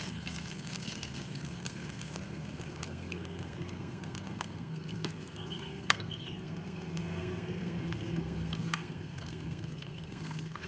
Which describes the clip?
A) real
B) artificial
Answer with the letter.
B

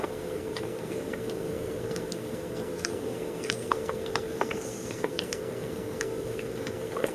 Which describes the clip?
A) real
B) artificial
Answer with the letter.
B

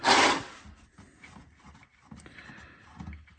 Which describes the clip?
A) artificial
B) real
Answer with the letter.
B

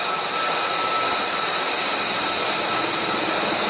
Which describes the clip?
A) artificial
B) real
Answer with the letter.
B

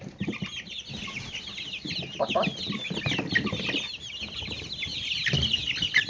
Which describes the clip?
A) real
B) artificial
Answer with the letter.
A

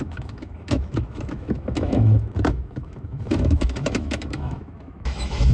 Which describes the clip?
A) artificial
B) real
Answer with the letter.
A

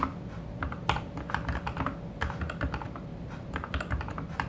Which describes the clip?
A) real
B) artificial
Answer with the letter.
A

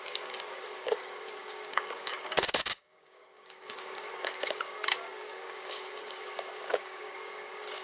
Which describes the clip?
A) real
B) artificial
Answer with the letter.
B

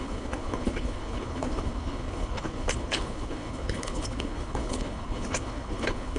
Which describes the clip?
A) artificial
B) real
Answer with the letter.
A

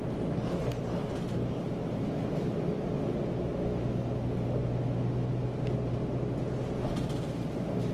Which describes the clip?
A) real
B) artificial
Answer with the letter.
A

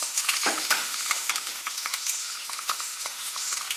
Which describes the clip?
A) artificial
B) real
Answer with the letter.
A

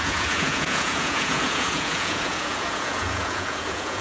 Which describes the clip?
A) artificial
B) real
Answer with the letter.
A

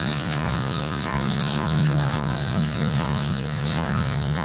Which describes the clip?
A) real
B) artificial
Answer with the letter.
B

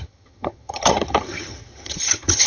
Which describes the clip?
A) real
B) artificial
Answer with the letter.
B